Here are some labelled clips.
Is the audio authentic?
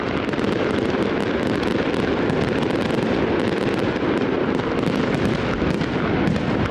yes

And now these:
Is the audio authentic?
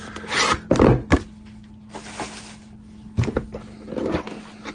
yes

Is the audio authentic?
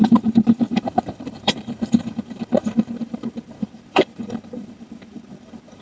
no